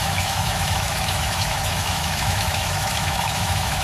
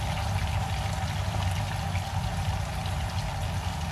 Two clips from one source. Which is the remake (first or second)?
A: first